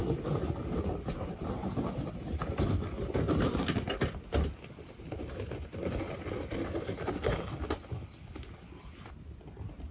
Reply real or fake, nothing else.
real